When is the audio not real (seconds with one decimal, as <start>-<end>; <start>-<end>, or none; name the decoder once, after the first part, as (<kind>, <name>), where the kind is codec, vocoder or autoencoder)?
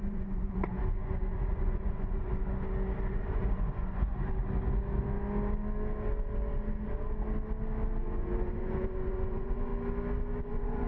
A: 0.0-2.3 (vocoder, Vocos); 3.1-4.1; 8.0-9.7; 10.4-10.9